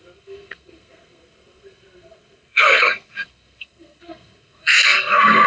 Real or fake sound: fake